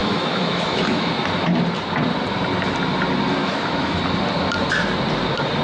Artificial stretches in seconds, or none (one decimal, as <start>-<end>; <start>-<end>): 0.0-1.1; 3.4-4.0